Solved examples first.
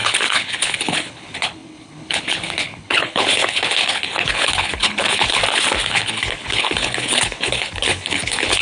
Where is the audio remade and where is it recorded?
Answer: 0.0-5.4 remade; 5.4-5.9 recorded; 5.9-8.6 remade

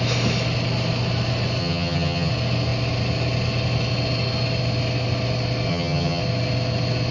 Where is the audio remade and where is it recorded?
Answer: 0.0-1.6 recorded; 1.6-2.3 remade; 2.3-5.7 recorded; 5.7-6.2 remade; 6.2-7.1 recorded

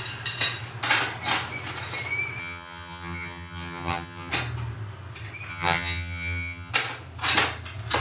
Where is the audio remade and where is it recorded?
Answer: 0.0-2.4 recorded; 2.4-4.3 remade; 4.3-5.5 recorded; 5.5-6.7 remade; 6.7-8.0 recorded

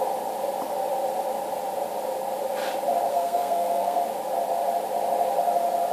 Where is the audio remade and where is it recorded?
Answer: 0.0-3.1 recorded; 3.1-4.0 remade; 4.0-5.9 recorded

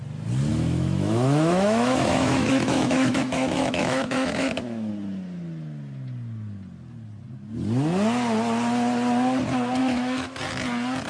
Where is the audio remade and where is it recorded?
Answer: 0.0-0.5 recorded; 0.5-4.9 remade; 4.9-9.8 recorded; 9.8-10.4 remade; 10.4-11.1 recorded

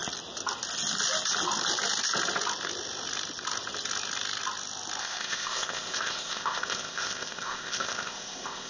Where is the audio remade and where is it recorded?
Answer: 0.0-5.0 recorded; 5.0-8.7 remade

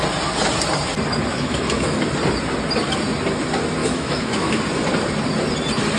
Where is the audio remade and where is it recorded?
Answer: 0.0-1.3 recorded; 1.3-2.0 remade; 2.0-3.8 recorded; 3.8-4.6 remade; 4.6-6.0 recorded